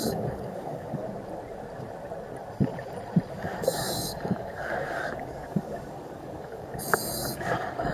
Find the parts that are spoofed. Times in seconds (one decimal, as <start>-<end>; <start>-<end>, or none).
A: 0.0-1.0; 3.3-7.9